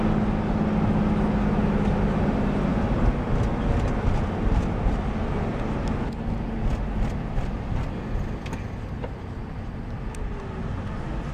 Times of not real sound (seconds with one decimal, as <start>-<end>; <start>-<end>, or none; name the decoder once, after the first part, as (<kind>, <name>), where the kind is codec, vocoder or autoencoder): none